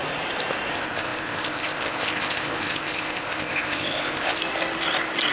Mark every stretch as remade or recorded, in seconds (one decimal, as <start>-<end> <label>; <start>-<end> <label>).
0.0-0.7 recorded; 0.7-4.4 remade; 4.4-5.3 recorded